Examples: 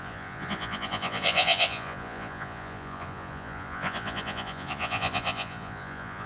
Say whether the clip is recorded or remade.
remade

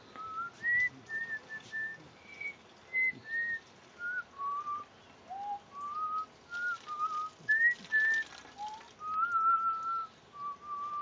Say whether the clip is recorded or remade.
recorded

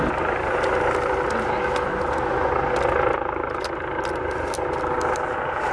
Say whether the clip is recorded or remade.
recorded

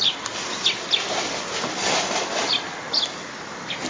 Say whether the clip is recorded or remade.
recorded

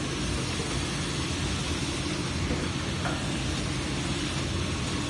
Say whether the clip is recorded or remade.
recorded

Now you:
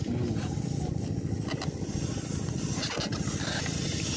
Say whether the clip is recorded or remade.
recorded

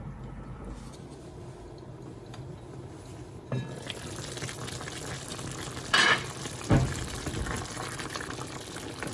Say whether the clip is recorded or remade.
recorded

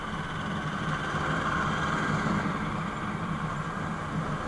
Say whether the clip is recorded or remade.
recorded